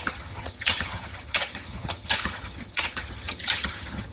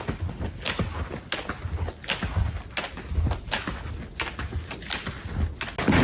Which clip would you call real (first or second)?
second